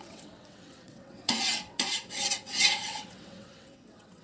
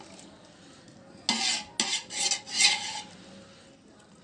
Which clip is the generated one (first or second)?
first